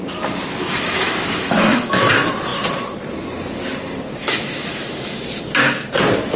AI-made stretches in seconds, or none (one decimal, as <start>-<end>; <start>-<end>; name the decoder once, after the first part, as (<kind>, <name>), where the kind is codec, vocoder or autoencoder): 0.6-2.1 (autoencoder, DAC-VAE); 4.2-5.3